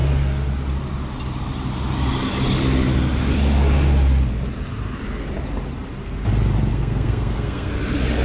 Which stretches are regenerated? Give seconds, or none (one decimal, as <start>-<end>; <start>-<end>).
6.7-7.7